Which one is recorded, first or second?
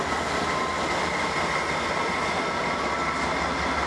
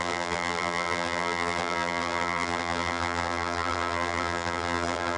first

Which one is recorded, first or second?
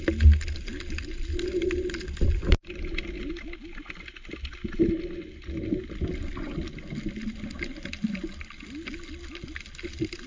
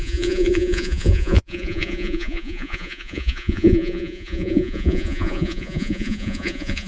first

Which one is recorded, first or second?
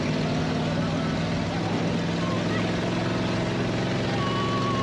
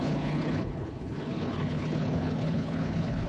first